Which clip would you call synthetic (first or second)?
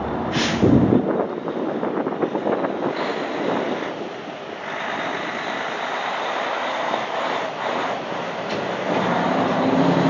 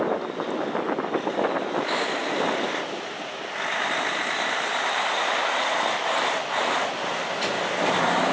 second